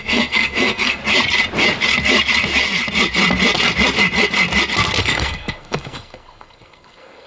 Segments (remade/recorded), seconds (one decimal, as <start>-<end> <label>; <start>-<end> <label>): 0.0-1.0 remade; 1.0-5.0 recorded; 5.0-7.3 remade